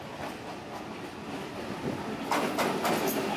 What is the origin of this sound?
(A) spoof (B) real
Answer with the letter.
B